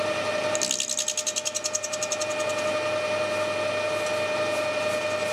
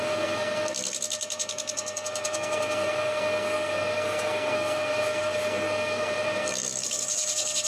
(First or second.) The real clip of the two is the first